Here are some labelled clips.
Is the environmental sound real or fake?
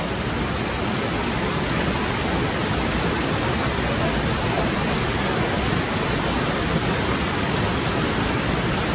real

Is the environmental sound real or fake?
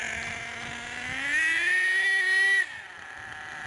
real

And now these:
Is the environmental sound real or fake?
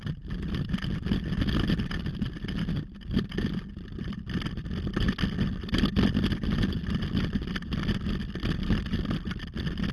real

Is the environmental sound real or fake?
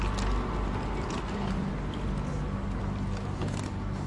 real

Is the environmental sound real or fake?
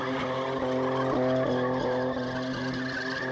real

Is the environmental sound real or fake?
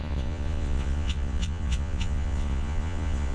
fake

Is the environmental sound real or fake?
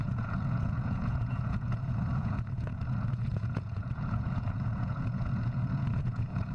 fake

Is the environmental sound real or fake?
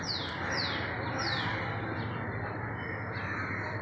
real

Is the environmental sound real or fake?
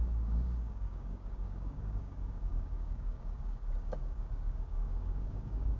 fake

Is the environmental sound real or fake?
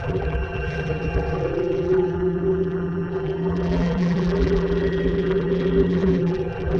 fake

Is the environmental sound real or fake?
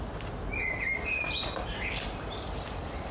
real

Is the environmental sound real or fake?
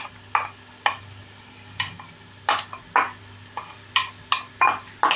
real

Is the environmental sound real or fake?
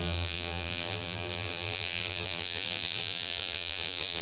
fake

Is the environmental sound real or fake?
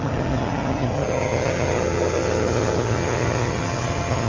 fake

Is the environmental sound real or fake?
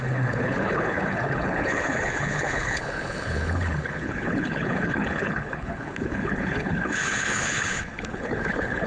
fake